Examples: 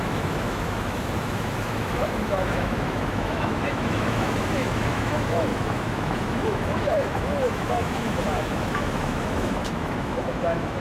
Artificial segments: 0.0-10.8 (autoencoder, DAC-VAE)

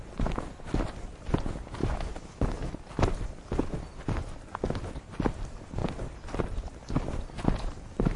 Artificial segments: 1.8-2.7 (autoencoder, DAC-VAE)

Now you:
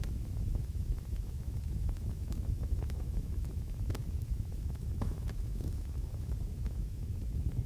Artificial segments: 0.0-7.7 (autoencoder, DAC-VAE)